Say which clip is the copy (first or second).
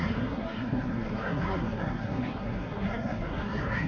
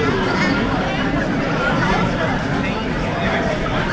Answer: first